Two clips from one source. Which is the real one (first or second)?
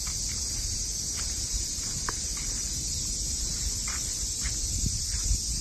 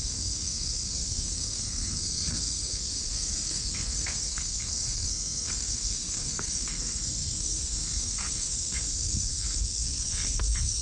first